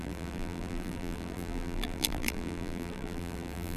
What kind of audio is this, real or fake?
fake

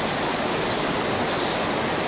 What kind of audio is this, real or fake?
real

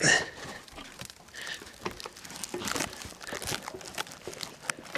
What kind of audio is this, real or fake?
real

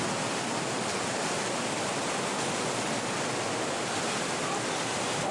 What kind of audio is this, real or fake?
real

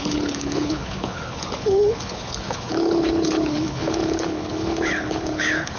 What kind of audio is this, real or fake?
fake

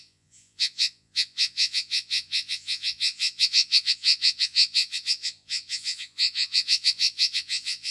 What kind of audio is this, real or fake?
fake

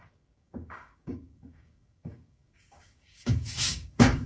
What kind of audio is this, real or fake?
fake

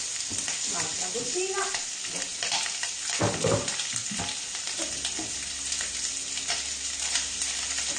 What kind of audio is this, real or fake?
real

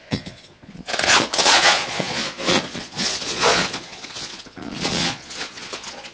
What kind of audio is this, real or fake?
fake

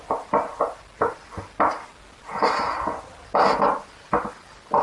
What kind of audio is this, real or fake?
real